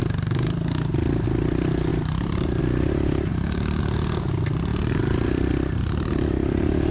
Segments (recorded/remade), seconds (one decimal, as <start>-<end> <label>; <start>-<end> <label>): 0.0-1.9 recorded; 1.9-2.6 remade; 2.6-3.3 recorded; 3.3-3.8 remade; 3.8-4.7 recorded; 4.7-5.5 remade; 5.5-6.9 recorded